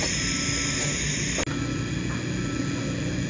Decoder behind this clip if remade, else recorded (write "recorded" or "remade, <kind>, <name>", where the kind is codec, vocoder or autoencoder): recorded